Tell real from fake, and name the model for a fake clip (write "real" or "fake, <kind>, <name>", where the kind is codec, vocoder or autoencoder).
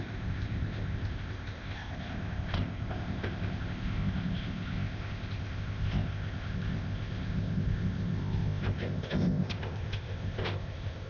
fake, codec, ZipCodec